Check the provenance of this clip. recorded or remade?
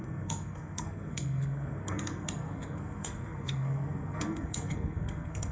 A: remade